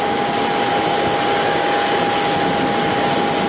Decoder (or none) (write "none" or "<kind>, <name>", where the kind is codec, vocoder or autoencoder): none